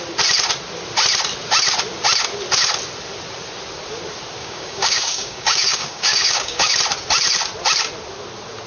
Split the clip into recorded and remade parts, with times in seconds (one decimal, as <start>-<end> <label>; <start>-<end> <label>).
0.0-4.4 recorded; 4.4-6.8 remade; 6.8-8.7 recorded

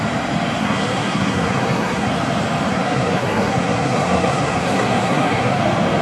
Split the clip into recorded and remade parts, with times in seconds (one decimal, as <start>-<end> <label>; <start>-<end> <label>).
0.0-0.6 recorded; 0.6-2.1 remade; 2.1-2.7 recorded; 2.7-5.6 remade; 5.6-6.0 recorded

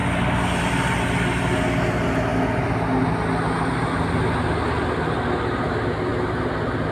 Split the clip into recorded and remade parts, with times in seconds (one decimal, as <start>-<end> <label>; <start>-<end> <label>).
0.0-0.7 remade; 0.7-6.9 recorded

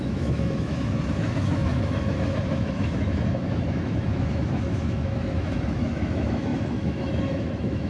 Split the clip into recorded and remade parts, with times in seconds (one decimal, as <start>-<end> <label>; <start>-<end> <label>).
0.0-7.9 remade

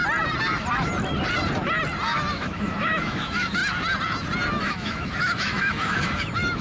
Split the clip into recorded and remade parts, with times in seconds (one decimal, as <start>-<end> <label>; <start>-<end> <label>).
0.0-2.3 recorded; 2.3-3.6 remade; 3.6-4.6 recorded; 4.6-6.6 remade